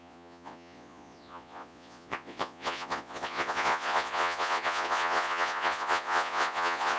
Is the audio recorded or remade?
remade